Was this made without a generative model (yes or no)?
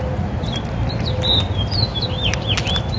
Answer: yes